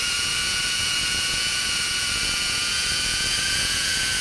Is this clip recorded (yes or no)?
no